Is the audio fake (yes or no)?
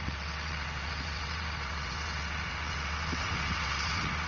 yes